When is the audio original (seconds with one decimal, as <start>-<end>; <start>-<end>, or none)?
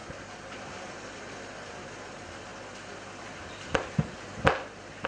0.0-5.1